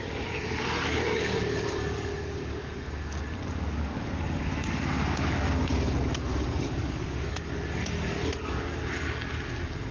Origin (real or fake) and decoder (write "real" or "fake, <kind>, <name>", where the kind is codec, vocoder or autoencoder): fake, codec, DAC